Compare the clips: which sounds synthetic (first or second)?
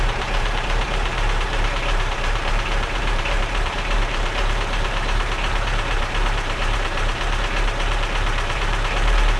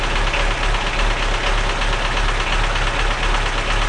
first